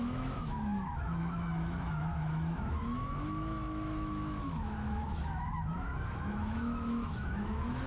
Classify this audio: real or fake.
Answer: fake